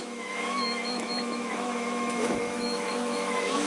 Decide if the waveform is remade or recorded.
remade